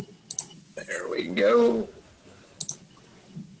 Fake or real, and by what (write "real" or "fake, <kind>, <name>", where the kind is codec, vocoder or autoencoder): real